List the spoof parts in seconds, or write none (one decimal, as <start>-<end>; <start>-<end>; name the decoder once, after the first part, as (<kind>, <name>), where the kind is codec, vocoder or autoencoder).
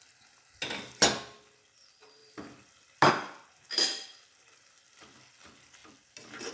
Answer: none